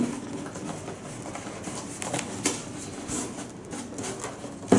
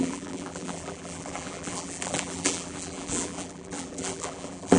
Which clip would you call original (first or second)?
first